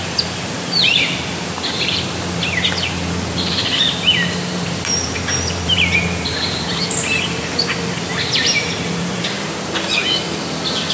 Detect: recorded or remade remade